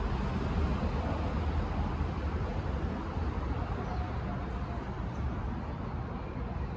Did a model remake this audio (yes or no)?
no